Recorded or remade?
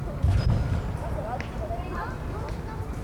recorded